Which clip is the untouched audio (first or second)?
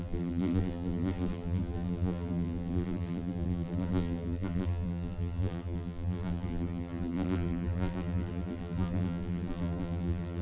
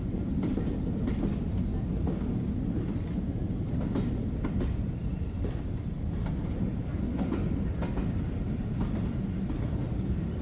second